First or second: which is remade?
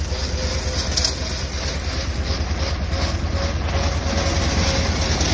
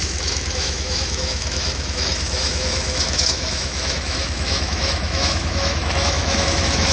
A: second